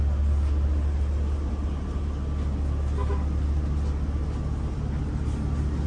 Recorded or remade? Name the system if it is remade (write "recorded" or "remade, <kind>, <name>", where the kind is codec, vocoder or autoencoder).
recorded